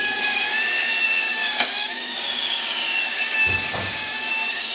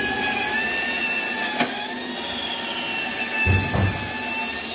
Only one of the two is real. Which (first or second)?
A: second